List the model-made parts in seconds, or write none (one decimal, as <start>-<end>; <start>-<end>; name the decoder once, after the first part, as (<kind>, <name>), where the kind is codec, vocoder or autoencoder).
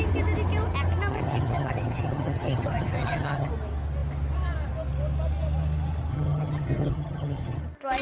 1.1-3.5 (vocoder, HiFi-GAN); 6.1-7.6